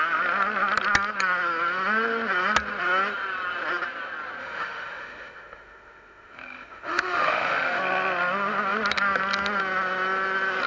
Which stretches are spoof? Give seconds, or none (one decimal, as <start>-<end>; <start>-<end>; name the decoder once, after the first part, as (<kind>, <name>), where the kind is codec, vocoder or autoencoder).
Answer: 4.4-7.8 (autoencoder, DAC-VAE)